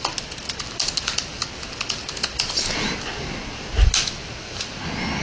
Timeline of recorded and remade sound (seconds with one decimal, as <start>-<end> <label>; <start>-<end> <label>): 0.0-5.2 recorded